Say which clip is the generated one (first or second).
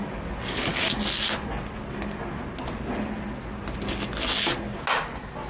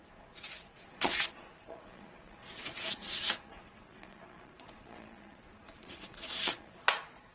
second